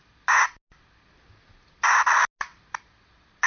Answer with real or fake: real